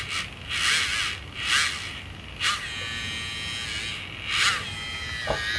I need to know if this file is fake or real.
real